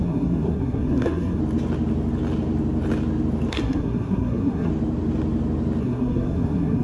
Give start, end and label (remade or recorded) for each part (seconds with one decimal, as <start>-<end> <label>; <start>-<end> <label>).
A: 0.0-1.4 remade; 1.4-3.5 recorded; 3.5-4.7 remade; 4.7-5.8 recorded; 5.8-6.8 remade